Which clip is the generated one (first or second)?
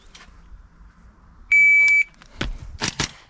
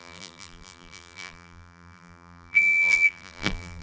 second